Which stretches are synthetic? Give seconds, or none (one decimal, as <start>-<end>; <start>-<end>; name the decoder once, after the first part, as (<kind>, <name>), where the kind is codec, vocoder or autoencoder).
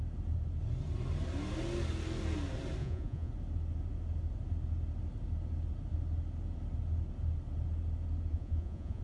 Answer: 2.8-3.3 (vocoder, Vocos); 8.3-9.0